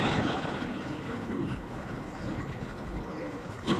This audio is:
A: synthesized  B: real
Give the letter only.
A